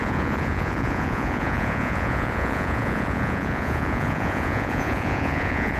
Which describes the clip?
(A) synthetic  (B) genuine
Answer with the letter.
A